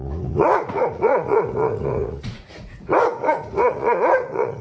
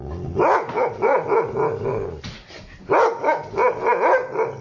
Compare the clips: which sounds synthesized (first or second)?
first